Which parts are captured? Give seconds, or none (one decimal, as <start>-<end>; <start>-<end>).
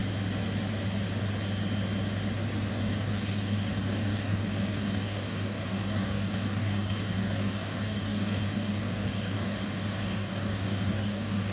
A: 0.0-2.7